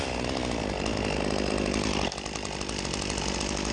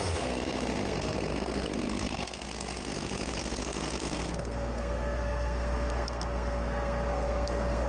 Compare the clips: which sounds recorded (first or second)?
first